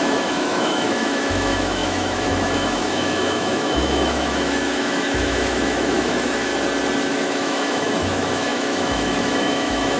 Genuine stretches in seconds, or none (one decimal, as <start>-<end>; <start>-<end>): 6.5-7.1